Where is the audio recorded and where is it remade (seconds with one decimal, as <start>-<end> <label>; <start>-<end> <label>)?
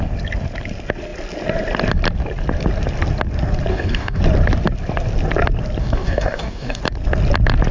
0.0-3.7 recorded; 3.7-4.2 remade; 4.2-5.8 recorded; 5.8-6.8 remade; 6.8-7.7 recorded